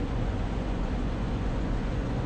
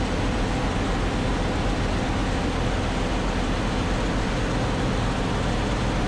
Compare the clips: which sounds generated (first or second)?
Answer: first